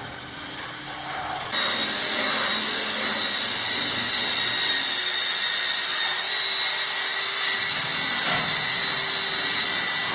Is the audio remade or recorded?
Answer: recorded